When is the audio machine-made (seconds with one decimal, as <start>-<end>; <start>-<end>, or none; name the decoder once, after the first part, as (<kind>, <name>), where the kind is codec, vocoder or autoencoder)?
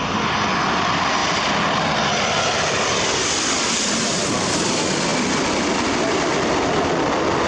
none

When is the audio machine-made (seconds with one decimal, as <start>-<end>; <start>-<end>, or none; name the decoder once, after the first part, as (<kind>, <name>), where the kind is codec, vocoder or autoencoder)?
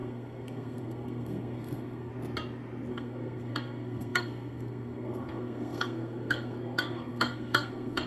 0.0-2.1 (codec, SNAC); 2.9-8.1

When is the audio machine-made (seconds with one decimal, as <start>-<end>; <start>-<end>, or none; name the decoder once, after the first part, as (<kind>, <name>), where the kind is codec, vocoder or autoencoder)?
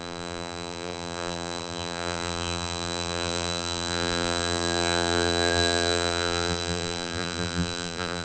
0.0-8.2 (vocoder, BigVGAN v2)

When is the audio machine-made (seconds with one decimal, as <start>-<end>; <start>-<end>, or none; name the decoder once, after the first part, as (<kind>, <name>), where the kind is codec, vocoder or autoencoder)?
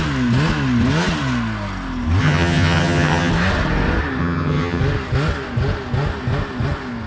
2.2-3.3 (vocoder, HiFi-GAN); 4.2-4.8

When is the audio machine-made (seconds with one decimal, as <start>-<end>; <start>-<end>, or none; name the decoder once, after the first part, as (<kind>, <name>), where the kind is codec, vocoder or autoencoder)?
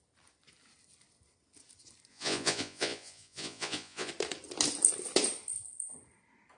2.1-4.1 (vocoder, Vocos)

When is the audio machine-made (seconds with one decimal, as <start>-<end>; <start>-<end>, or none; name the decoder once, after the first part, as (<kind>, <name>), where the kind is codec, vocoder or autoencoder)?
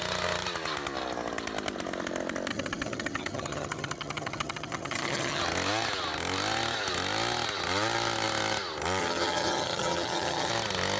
2.5-5.4 (vocoder, HiFi-GAN); 9.0-10.5